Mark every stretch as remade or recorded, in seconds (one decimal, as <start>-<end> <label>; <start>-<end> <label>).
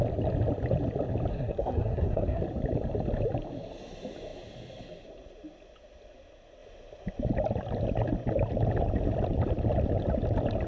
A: 0.0-1.3 recorded; 1.3-2.4 remade; 2.4-10.7 recorded